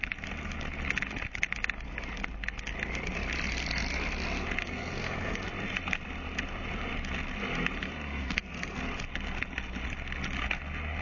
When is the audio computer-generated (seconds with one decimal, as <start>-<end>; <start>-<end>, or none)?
4.6-5.5; 8.2-8.8

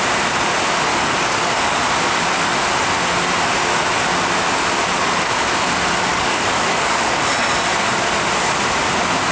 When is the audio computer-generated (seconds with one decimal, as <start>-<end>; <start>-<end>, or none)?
0.9-1.8; 6.1-7.2